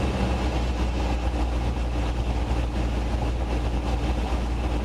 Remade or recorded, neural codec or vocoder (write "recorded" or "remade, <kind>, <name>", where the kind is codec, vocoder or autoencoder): recorded